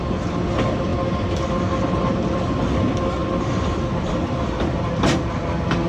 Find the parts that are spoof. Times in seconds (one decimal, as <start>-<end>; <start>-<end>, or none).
2.1-2.6